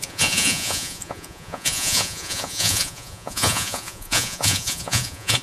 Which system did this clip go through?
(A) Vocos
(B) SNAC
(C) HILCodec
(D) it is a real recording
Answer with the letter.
A